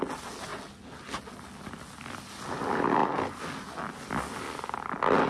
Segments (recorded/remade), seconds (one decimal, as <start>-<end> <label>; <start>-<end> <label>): 0.0-5.3 recorded